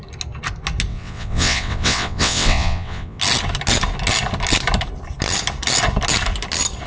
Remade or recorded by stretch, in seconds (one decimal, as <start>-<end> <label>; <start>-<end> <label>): 0.0-0.9 recorded; 0.9-3.2 remade; 3.2-6.9 recorded